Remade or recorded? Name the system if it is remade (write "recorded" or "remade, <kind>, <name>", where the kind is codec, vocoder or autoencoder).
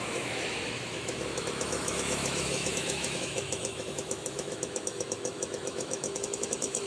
remade, autoencoder, DAC-VAE